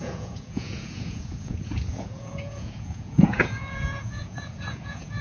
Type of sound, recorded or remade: remade